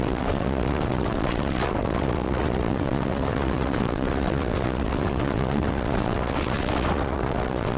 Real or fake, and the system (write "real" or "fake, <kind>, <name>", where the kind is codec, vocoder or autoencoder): fake, vocoder, WaveNeXt